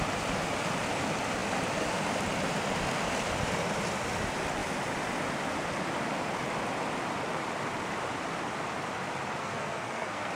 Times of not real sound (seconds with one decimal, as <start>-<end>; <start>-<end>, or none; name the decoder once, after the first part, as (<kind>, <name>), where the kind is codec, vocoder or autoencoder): 9.4-10.3 (codec, SNAC)